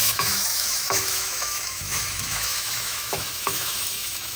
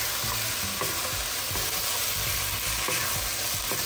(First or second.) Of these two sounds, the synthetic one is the first